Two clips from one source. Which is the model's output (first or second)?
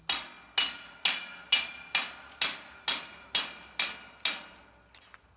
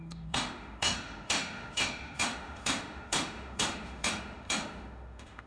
second